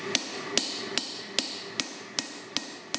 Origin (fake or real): real